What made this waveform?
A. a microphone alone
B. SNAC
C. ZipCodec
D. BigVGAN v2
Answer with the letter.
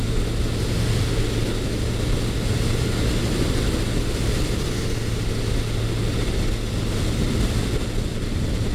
A